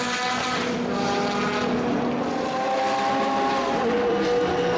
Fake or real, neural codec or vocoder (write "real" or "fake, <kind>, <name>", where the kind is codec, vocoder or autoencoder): real